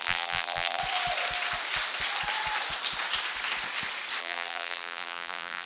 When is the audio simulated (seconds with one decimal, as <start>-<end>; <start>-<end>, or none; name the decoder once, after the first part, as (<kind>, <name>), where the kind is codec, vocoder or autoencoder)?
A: 0.0-0.8 (vocoder, BigVGAN v2); 4.2-5.7